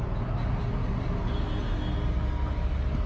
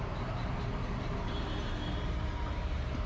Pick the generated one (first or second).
second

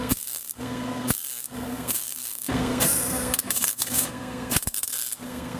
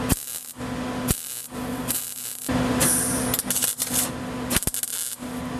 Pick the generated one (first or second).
first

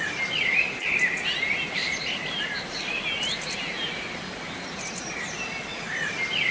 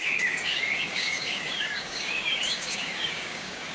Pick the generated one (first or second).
second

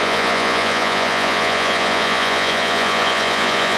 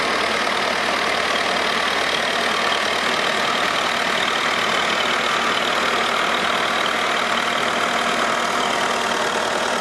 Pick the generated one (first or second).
first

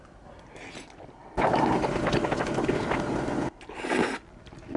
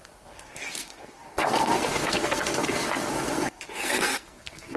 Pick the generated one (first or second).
second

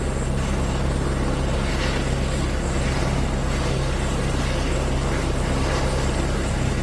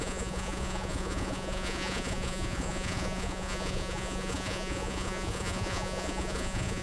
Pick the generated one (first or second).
second